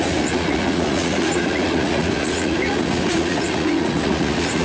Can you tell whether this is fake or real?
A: fake